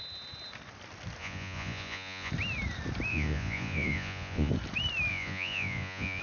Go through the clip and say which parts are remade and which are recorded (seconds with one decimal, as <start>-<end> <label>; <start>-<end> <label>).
0.0-1.2 recorded; 1.2-2.3 remade; 2.3-3.1 recorded; 3.1-4.5 remade; 4.5-5.1 recorded; 5.1-6.2 remade